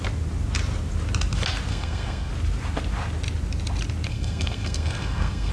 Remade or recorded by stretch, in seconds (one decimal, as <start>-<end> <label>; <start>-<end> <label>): 0.0-1.7 recorded; 1.7-2.3 remade; 2.3-4.1 recorded; 4.1-5.5 remade